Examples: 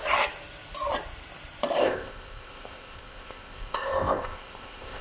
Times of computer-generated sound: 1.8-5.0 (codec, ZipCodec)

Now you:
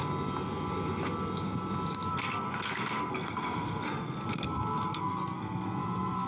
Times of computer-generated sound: 2.1-6.3 (codec, SNAC)

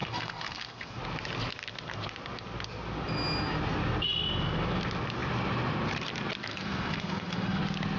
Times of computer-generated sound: 0.0-1.0 (codec, SNAC); 6.5-7.6

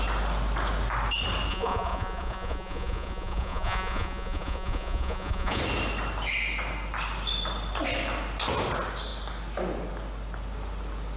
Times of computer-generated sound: 1.5-5.6 (vocoder, Vocos)

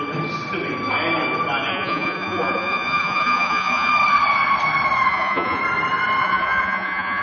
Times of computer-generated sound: 1.7-3.9 (vocoder, Vocos); 5.1-5.6; 6.2-7.2